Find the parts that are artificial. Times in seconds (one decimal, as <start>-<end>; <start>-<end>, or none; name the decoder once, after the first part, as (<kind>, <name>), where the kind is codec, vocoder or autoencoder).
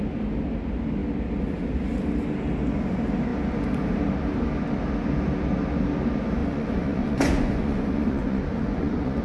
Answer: 6.4-9.2 (vocoder, Vocos)